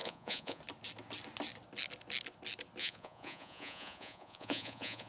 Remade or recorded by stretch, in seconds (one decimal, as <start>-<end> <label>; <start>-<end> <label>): 0.0-0.6 remade; 0.6-2.8 recorded; 2.8-5.1 remade